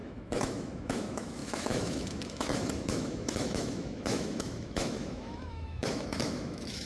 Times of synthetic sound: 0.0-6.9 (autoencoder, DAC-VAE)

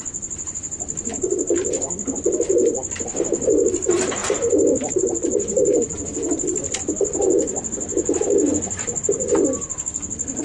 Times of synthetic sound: 0.0-10.4 (vocoder, BigVGAN v2)

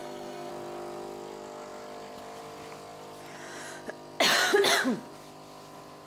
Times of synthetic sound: 0.0-0.5 (codec, SNAC)

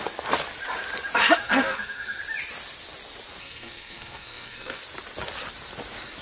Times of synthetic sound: 1.4-2.2 (codec, SNAC); 3.4-4.8